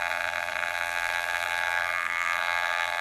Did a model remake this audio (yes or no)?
yes